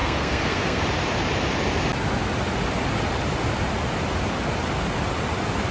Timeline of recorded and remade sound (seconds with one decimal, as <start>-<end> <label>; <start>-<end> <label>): 0.0-0.8 remade; 0.8-5.7 recorded